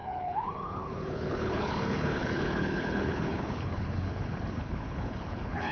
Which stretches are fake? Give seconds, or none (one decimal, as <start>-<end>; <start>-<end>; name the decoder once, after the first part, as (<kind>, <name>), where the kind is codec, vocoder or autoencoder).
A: 0.0-5.7 (codec, HILCodec)